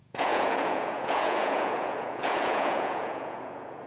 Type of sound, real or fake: fake